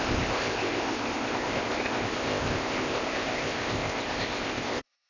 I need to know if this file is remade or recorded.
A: remade